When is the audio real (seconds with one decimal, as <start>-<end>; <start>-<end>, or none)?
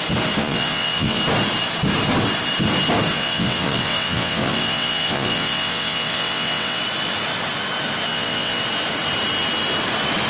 0.0-0.4; 1.2-3.1; 6.8-8.1; 8.6-10.3